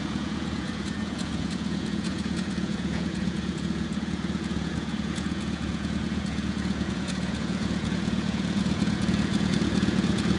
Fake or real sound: fake